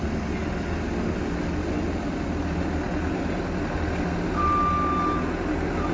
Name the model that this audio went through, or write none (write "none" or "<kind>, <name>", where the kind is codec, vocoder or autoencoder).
none